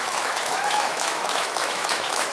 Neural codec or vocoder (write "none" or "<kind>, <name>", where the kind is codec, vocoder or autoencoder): autoencoder, DAC-VAE